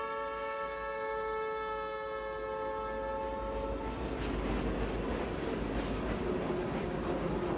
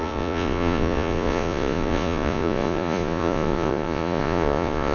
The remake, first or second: second